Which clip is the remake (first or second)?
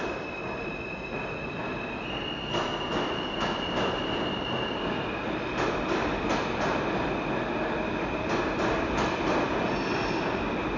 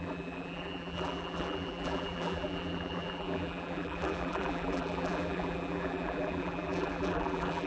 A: second